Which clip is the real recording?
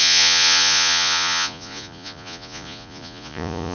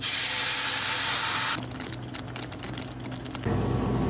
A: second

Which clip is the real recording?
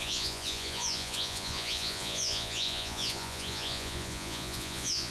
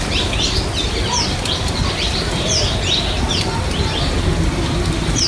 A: second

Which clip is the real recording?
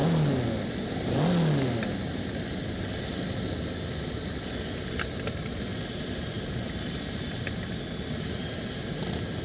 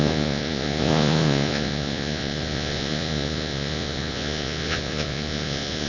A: first